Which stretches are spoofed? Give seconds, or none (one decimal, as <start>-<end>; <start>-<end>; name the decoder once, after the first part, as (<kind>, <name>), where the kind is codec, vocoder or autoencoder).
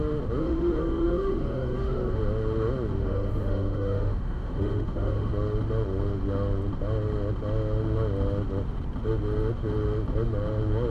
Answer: 0.4-2.2 (autoencoder, DAC-VAE); 3.0-5.3